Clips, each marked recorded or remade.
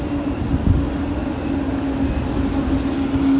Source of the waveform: recorded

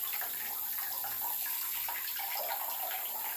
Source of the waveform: recorded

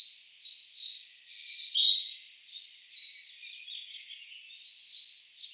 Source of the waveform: recorded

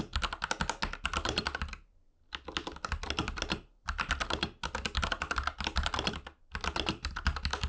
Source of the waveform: recorded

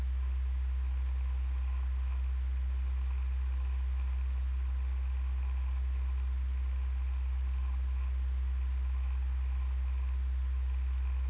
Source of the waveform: recorded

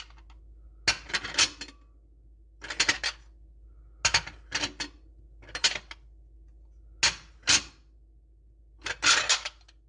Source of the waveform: recorded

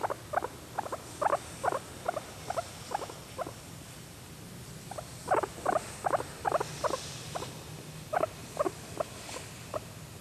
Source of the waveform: recorded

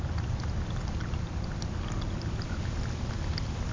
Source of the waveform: recorded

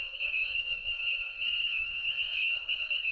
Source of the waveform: remade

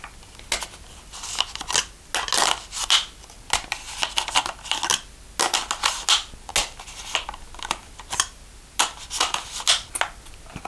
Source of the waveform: recorded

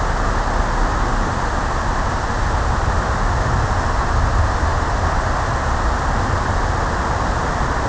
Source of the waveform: recorded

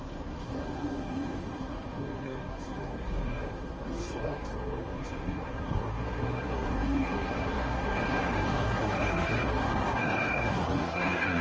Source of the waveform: remade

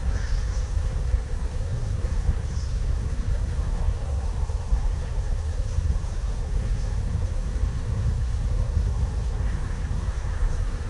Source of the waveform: remade